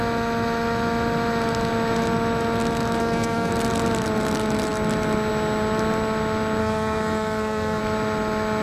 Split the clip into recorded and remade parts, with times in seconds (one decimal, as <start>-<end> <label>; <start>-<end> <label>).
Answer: 0.0-3.0 recorded; 3.0-3.5 remade; 3.5-6.6 recorded; 6.6-7.8 remade; 7.8-8.6 recorded